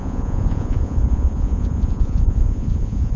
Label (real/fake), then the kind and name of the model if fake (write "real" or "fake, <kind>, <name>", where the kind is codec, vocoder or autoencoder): fake, vocoder, Vocos